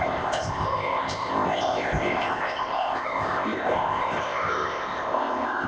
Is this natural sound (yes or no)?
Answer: no